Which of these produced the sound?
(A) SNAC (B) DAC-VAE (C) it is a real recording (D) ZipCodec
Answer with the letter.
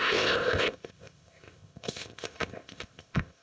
D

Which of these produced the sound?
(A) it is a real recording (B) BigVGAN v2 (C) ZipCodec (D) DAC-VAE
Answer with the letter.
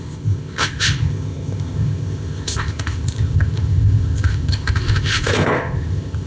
C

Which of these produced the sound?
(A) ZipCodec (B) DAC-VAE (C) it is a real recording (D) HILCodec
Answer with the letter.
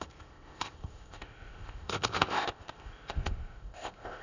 A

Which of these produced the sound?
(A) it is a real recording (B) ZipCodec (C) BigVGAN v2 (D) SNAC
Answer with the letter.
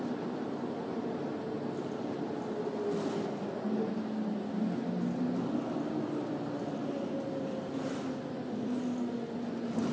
A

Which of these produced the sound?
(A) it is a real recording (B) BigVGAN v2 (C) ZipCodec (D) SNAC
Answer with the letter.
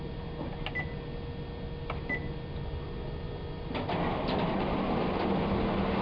A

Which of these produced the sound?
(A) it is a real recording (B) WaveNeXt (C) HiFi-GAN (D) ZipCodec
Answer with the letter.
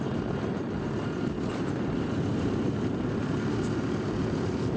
A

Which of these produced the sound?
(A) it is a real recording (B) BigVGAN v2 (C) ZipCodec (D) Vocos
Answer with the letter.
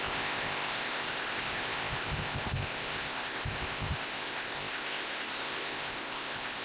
C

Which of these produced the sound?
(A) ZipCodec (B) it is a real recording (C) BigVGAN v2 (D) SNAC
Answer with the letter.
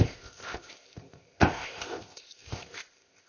A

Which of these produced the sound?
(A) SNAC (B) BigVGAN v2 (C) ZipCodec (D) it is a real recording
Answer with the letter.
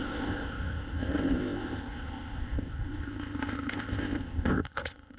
C